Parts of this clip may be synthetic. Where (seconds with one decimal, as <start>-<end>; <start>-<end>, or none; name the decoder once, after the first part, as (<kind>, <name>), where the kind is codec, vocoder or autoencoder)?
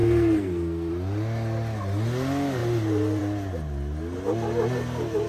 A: 0.0-0.9 (codec, SNAC)